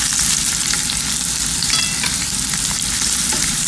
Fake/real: fake